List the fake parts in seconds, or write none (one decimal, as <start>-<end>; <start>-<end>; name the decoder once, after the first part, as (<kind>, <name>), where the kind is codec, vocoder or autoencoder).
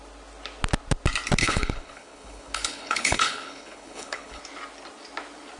1.4-4.4 (codec, HILCodec)